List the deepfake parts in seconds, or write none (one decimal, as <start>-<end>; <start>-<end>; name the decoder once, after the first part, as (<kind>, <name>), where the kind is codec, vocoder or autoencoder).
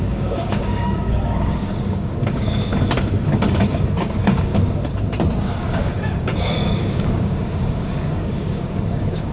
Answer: 0.0-2.7 (codec, DAC); 4.0-4.5; 5.4-9.3